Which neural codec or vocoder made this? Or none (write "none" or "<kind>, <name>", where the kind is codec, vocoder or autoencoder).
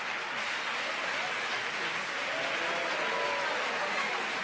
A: none